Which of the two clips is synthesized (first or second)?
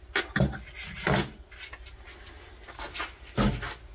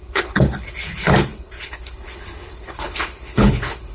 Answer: second